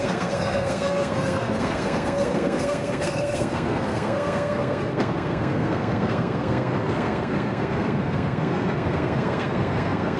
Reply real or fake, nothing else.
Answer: fake